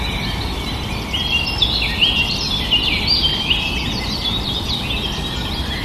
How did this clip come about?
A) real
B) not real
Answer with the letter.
A